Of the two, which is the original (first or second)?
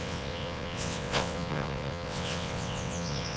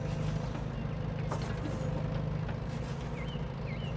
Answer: second